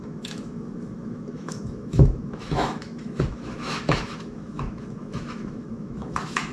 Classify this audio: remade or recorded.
remade